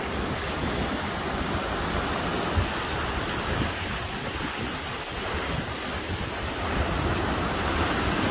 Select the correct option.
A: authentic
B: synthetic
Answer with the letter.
A